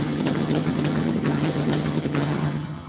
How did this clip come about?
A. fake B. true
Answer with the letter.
A